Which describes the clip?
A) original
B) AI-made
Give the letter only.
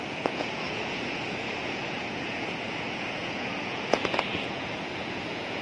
B